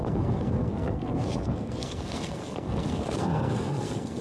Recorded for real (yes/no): no